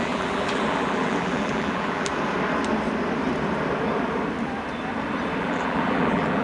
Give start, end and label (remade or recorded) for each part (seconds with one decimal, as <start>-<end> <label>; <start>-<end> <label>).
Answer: 0.0-2.1 remade; 2.1-5.4 recorded; 5.4-6.4 remade